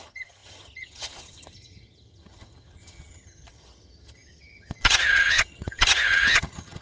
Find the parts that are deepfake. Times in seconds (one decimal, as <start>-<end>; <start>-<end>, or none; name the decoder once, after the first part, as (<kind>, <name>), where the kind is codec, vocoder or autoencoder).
0.0-6.8 (vocoder, HiFi-GAN)